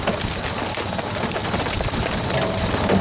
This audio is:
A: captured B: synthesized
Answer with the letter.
A